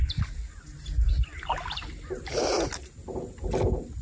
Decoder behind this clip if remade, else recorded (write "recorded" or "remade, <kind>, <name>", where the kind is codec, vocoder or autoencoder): recorded